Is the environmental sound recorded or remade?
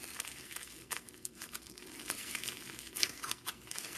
remade